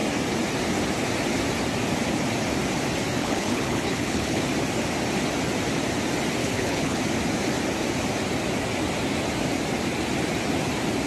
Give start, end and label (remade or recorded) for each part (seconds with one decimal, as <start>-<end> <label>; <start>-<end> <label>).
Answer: 0.0-3.2 recorded; 3.2-4.4 remade; 4.4-6.4 recorded; 6.4-7.0 remade; 7.0-11.1 recorded